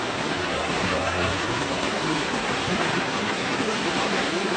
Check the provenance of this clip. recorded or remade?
remade